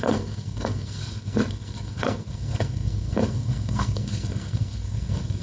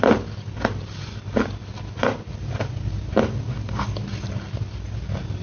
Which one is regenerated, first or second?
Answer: first